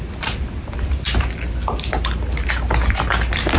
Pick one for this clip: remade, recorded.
remade